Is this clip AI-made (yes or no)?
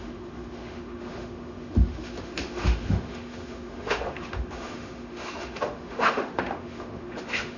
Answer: yes